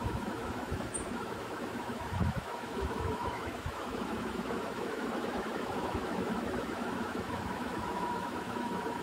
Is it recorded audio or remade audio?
remade